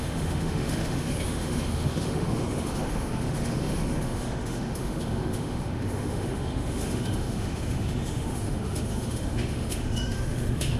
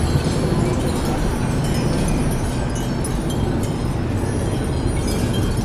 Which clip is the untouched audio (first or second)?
second